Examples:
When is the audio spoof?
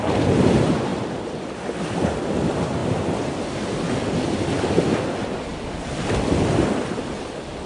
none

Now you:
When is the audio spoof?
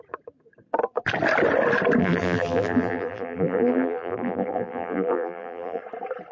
2.0-5.8 (vocoder, BigVGAN v2)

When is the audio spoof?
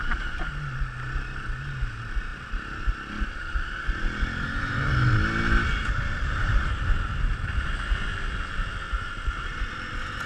none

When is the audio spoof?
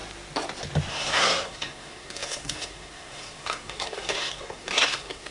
0.9-5.3 (codec, SNAC)